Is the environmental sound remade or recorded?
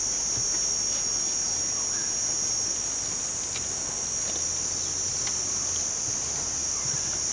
recorded